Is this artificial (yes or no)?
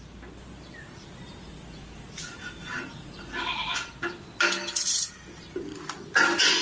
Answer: no